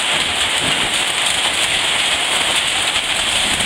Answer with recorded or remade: recorded